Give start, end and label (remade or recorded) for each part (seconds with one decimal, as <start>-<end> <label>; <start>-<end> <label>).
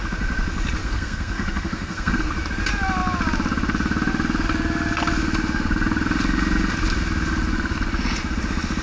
0.0-0.8 recorded; 0.8-2.3 remade; 2.3-8.8 recorded